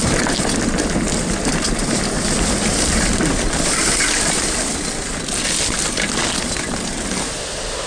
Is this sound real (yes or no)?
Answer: yes